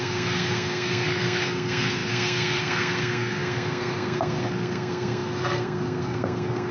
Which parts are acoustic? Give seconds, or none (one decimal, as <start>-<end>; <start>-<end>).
none